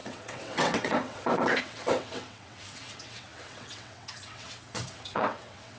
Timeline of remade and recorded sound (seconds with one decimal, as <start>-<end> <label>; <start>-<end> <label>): 0.0-5.8 remade